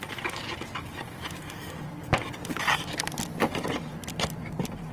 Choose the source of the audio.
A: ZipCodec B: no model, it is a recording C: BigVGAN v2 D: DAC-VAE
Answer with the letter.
B